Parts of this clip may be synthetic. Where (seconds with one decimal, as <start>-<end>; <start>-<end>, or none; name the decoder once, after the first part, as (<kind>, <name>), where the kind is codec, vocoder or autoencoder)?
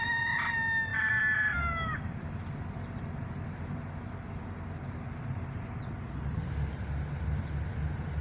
none